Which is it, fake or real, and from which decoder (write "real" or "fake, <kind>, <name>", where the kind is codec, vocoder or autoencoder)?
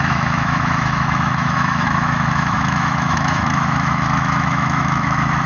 fake, autoencoder, DAC-VAE